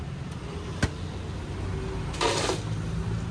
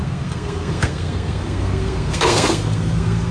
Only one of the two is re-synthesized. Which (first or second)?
second